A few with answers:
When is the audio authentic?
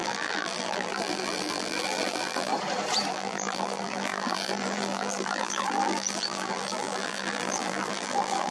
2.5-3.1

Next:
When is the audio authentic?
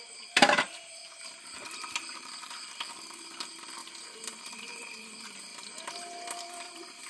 3.8-4.4; 5.5-7.1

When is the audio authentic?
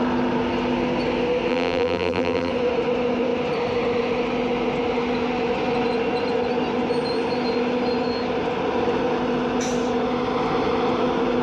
0.0-1.5; 2.5-11.4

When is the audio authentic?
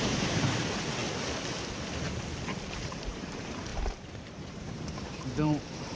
1.0-2.8